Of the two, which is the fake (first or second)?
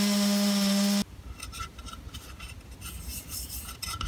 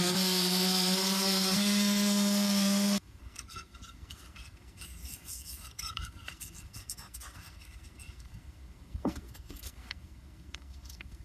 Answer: second